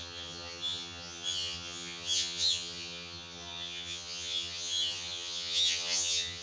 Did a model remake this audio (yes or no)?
yes